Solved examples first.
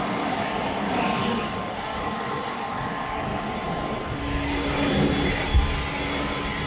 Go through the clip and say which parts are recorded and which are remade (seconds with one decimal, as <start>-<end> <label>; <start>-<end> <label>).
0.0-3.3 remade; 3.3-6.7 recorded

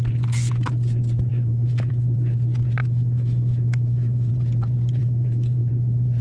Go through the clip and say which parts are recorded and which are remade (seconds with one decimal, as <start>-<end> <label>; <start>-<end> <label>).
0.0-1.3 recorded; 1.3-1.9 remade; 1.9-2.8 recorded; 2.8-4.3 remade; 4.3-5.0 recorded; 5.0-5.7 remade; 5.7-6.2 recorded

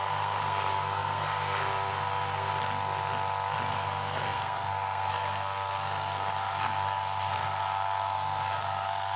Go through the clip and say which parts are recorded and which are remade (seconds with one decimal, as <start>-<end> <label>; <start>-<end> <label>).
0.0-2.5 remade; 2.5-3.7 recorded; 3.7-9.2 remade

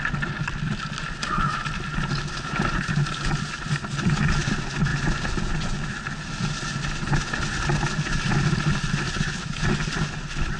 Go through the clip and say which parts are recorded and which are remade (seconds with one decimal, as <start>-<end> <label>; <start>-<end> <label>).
0.0-10.6 recorded

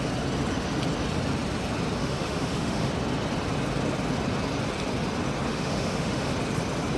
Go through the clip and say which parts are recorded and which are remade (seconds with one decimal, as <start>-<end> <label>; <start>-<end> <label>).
0.0-2.0 recorded; 2.0-2.9 remade; 2.9-5.5 recorded; 5.5-6.3 remade; 6.3-7.0 recorded

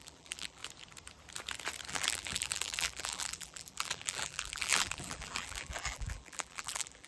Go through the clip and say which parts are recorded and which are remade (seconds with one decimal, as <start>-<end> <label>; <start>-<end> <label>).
0.0-0.6 remade; 0.6-1.9 recorded; 1.9-7.1 remade

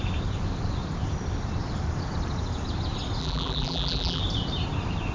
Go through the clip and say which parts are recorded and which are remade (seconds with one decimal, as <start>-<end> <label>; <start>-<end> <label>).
0.0-3.2 recorded; 3.2-4.2 remade; 4.2-5.1 recorded

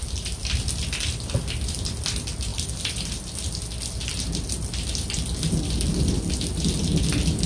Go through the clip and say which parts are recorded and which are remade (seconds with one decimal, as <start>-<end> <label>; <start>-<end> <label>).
0.0-7.5 recorded